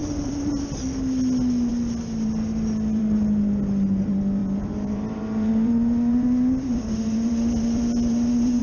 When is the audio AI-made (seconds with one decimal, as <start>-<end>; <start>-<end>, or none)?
0.0-0.6; 4.4-8.6

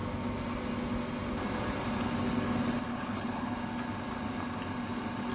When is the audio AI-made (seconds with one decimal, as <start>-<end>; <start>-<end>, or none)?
2.9-3.6